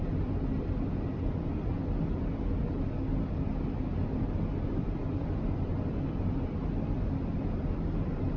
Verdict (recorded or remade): recorded